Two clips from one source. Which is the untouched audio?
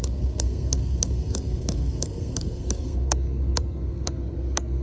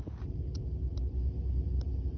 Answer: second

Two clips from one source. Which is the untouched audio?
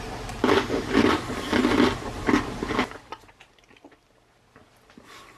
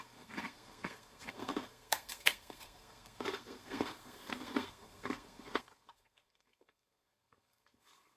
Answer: first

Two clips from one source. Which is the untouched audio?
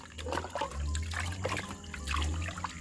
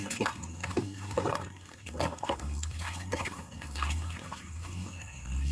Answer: first